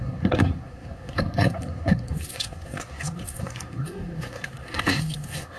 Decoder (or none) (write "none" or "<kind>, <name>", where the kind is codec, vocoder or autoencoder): codec, SNAC